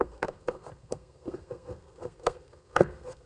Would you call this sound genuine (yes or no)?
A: no